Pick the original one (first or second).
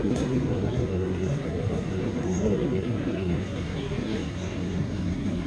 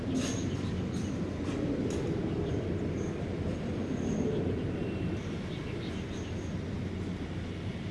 second